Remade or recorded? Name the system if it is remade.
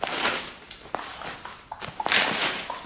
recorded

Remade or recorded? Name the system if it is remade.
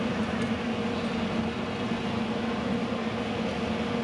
recorded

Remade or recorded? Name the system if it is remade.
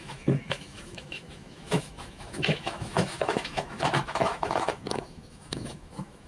remade, autoencoder, DAC-VAE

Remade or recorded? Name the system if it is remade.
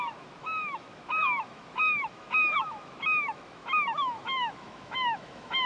remade, autoencoder, DAC-VAE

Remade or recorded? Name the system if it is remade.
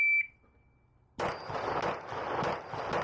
recorded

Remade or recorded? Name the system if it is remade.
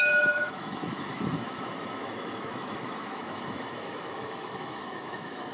remade, autoencoder, DAC-VAE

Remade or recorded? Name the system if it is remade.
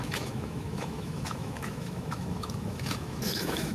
remade, autoencoder, DAC-VAE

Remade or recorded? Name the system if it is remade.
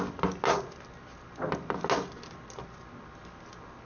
recorded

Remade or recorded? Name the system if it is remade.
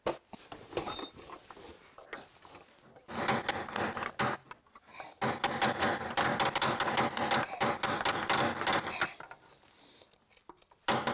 recorded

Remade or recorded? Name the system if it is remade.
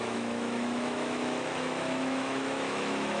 remade, autoencoder, DAC-VAE